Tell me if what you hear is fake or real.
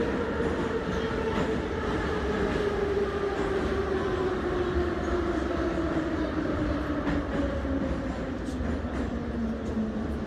real